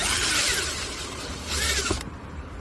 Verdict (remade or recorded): remade